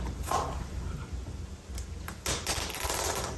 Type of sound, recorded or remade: recorded